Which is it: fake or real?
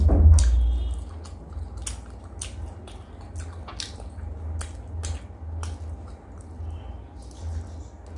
real